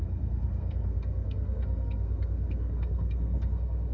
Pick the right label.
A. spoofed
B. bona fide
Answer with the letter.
A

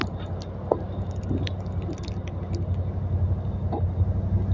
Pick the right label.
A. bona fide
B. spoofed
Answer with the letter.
A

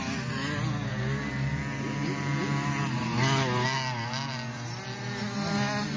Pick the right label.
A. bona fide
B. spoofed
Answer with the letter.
A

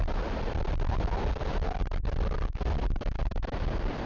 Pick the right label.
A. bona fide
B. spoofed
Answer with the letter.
A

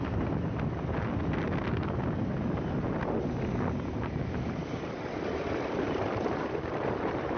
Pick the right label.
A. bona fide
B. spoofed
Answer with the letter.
A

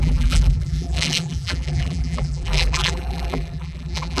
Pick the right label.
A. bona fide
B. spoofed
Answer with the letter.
B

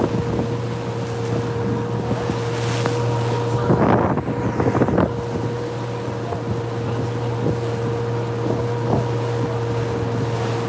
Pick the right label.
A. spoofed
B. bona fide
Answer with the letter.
B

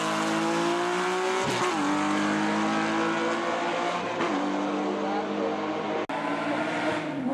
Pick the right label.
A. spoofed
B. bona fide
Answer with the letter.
B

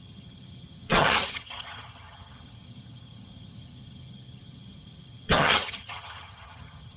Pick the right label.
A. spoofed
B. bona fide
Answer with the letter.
A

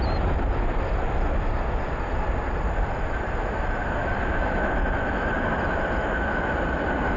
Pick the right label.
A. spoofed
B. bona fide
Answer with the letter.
B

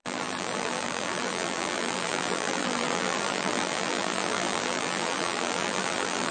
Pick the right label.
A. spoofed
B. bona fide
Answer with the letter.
A